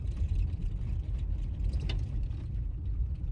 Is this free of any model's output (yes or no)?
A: no